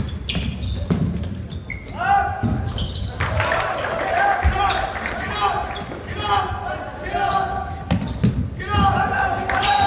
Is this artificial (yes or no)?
no